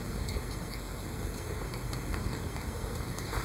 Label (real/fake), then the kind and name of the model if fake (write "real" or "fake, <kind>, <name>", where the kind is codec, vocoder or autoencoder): fake, codec, SNAC